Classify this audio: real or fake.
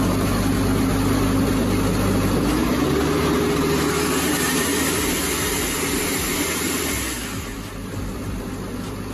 real